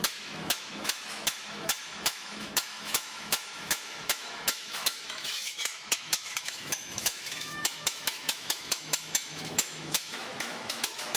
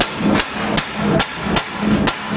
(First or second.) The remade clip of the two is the first